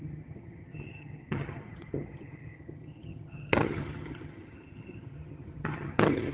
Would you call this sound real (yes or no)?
no